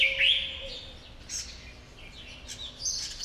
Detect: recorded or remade recorded